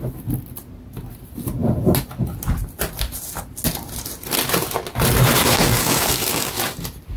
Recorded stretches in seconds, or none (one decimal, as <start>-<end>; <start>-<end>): 0.0-5.6; 6.5-7.2